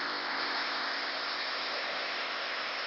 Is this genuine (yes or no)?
no